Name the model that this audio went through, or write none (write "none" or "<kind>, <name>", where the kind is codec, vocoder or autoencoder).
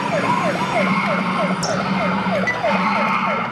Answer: none